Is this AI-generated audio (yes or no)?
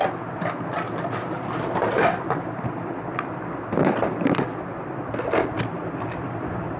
no